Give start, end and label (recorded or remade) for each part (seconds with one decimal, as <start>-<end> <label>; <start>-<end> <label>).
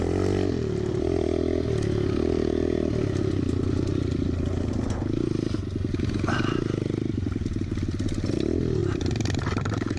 0.0-8.8 recorded; 8.8-10.0 remade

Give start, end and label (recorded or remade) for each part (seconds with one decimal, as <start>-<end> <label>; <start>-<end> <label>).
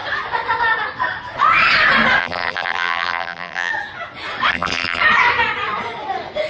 0.0-2.2 recorded; 2.2-3.7 remade; 3.7-4.5 recorded; 4.5-5.0 remade; 5.0-6.5 recorded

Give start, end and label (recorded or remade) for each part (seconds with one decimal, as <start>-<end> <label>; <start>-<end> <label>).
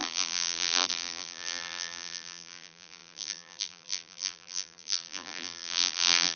0.0-6.4 remade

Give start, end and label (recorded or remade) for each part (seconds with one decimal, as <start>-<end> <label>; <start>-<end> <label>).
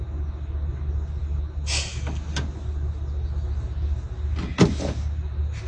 0.0-5.7 recorded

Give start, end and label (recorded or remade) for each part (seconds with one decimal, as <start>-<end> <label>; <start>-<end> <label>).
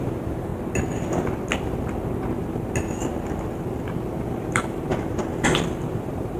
0.0-0.5 remade; 0.5-4.3 recorded; 4.3-4.9 remade; 4.9-6.0 recorded; 6.0-6.4 remade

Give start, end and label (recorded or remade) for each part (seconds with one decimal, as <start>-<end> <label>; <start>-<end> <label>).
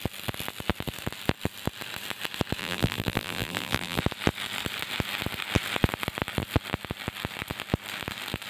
0.0-2.6 recorded; 2.6-4.0 remade; 4.0-8.5 recorded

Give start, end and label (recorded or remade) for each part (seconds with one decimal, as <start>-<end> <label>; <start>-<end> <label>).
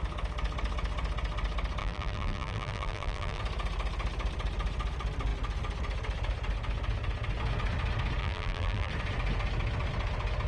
0.0-1.8 recorded; 1.8-3.4 remade; 3.4-8.2 recorded; 8.2-8.9 remade; 8.9-10.5 recorded